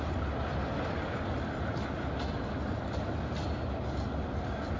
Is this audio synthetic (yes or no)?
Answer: no